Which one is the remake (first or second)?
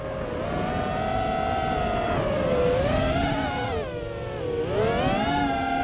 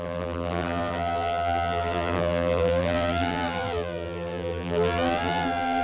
second